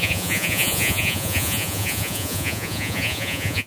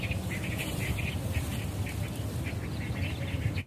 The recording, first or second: second